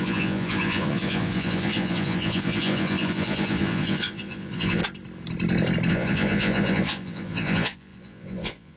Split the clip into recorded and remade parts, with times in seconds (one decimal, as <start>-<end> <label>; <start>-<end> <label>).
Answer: 0.0-4.8 remade; 4.8-5.9 recorded; 5.9-8.8 remade